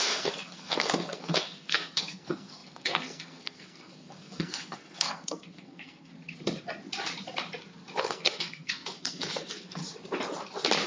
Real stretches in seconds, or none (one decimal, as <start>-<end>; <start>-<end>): 6.1-8.0; 9.8-10.9